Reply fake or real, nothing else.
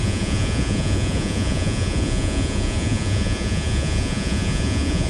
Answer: fake